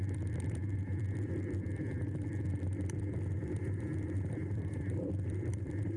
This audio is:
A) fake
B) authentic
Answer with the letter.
A